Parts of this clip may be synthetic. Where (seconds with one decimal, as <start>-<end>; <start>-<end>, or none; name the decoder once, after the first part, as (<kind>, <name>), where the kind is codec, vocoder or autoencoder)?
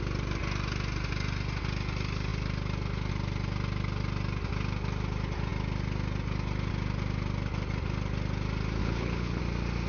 8.8-9.4 (codec, HILCodec)